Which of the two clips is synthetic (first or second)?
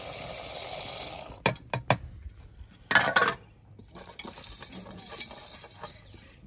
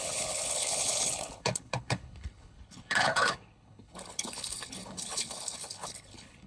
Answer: second